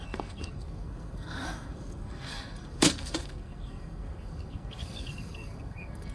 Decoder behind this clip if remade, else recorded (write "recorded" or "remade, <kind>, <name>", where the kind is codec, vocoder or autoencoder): remade, codec, SNAC